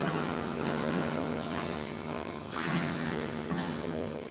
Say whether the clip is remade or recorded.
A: remade